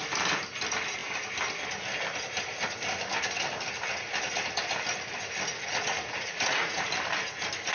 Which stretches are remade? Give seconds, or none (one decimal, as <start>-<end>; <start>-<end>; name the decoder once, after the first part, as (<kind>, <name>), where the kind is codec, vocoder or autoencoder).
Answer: 5.5-6.9 (vocoder, Vocos)